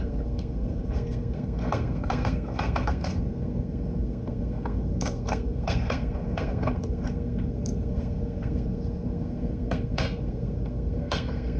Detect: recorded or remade remade